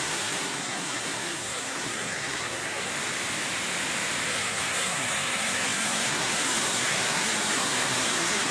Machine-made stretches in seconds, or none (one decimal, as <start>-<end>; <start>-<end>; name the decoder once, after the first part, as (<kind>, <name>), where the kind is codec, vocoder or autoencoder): 0.0-2.9 (codec, SNAC); 4.3-8.5